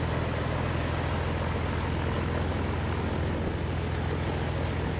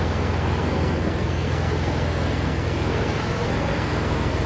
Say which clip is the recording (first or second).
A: first